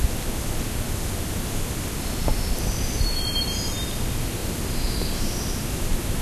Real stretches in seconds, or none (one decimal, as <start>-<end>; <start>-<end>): 0.0-6.2